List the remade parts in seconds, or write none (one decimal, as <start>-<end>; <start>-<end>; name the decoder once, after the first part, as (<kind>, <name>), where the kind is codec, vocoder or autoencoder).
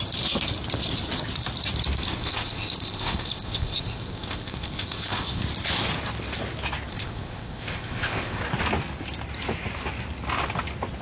2.2-5.4 (codec, ZipCodec); 6.9-8.4